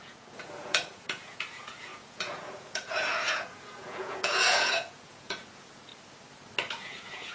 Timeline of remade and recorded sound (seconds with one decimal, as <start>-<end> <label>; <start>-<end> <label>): 0.0-5.9 remade; 5.9-6.7 recorded; 6.7-7.3 remade